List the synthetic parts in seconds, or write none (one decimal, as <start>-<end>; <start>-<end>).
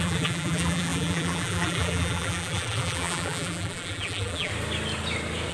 0.0-4.5